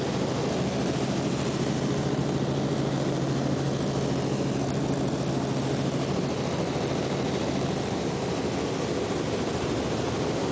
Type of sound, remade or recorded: recorded